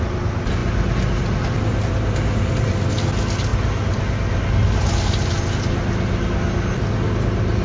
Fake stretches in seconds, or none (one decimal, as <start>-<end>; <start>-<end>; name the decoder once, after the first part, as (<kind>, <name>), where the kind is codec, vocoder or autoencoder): none